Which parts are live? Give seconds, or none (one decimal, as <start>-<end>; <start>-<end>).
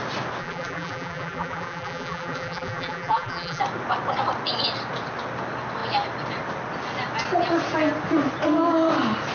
0.0-0.4; 3.6-9.3